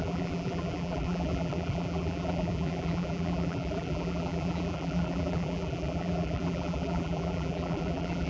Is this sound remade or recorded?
remade